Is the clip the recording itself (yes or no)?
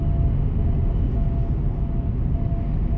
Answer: yes